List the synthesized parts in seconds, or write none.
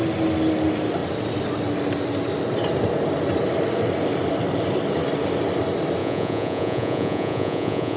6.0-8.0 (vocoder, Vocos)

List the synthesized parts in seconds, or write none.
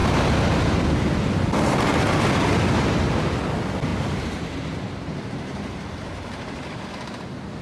3.9-6.8 (vocoder, BigVGAN v2)